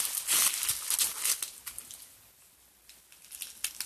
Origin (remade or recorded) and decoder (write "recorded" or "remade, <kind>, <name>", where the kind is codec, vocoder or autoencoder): recorded